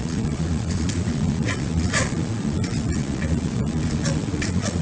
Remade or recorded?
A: remade